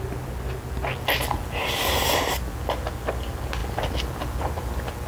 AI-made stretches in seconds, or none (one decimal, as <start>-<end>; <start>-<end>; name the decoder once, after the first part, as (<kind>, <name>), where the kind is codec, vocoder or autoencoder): 1.6-2.4 (vocoder, BigVGAN v2)